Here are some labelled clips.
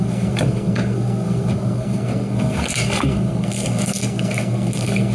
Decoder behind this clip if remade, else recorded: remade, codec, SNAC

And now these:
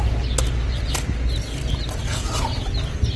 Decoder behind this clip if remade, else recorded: recorded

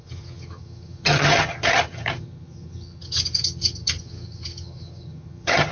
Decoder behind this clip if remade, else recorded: remade, vocoder, HiFi-GAN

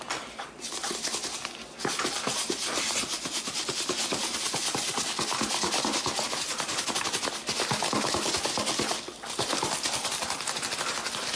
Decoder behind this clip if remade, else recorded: recorded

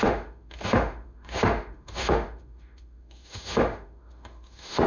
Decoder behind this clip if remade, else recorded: remade, autoencoder, DAC-VAE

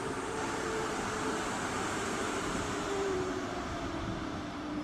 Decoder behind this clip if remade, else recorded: remade, vocoder, BigVGAN v2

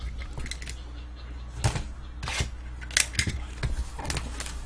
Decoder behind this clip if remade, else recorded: recorded